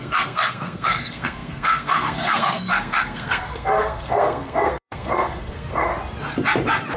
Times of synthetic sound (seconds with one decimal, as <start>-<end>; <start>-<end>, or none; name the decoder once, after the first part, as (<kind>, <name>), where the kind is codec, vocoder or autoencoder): 0.0-5.9 (codec, SNAC)